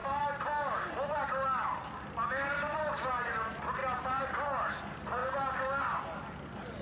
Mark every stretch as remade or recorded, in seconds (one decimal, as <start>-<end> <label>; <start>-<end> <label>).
0.0-0.9 remade; 0.9-6.8 recorded